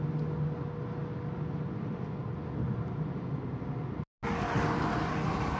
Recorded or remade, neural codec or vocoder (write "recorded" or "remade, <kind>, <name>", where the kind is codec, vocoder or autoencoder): recorded